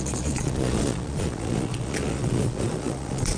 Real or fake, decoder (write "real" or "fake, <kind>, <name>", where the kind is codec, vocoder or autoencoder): fake, vocoder, Vocos